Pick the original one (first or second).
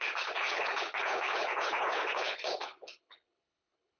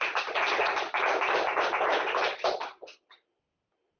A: second